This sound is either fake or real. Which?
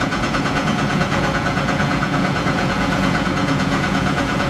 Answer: fake